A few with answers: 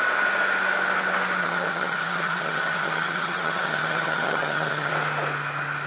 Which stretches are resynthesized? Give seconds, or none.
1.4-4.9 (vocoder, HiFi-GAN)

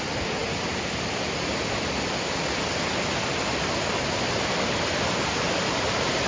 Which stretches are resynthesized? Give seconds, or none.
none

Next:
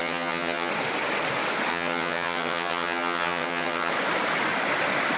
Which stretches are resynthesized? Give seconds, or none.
0.0-0.7 (vocoder, HiFi-GAN); 1.7-3.9